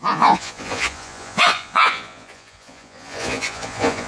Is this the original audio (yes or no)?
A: no